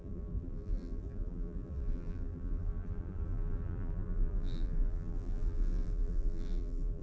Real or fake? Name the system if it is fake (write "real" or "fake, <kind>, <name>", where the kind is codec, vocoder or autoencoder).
fake, vocoder, BigVGAN v2